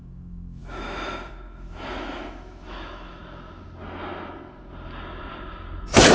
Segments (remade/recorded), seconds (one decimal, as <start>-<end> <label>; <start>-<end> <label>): 0.0-3.2 remade; 3.2-6.1 recorded